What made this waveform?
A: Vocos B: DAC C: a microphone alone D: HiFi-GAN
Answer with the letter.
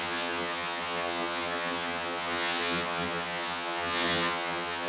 D